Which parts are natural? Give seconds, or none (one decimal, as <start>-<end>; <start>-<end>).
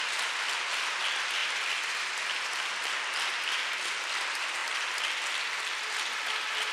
0.0-6.7